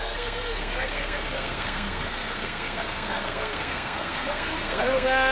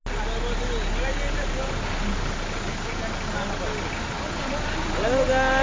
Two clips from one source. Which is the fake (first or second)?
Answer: first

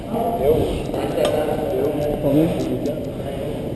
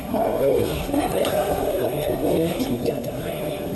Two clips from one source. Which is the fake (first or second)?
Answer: second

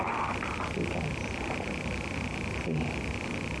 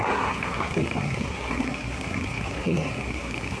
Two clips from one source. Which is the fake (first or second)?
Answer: second